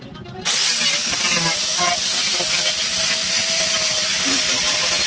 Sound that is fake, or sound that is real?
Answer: real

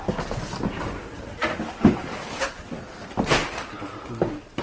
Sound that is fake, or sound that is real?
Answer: real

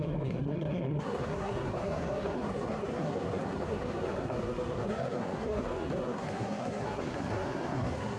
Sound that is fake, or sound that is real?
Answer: fake